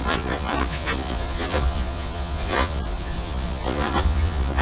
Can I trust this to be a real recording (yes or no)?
no